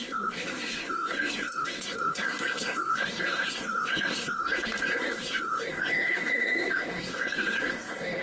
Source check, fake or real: fake